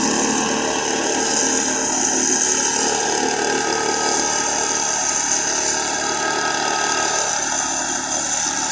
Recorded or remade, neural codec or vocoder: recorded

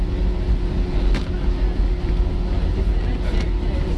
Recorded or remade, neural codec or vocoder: recorded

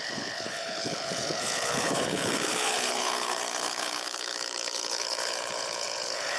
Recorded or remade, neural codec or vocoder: remade, codec, HILCodec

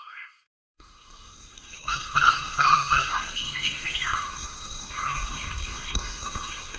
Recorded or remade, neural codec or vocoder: remade, codec, SNAC